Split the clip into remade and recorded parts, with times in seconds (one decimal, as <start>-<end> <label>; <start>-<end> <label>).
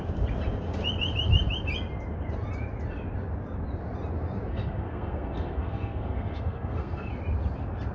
0.0-4.5 recorded; 4.5-7.1 remade; 7.1-7.9 recorded